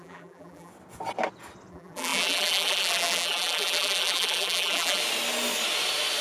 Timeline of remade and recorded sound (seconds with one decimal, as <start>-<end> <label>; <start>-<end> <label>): 0.0-0.7 remade; 0.7-1.7 recorded; 1.7-5.0 remade; 5.0-6.2 recorded